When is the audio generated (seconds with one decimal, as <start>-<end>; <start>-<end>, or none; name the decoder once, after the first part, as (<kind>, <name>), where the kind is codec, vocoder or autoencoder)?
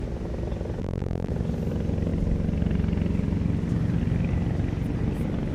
0.8-1.3 (vocoder, BigVGAN v2)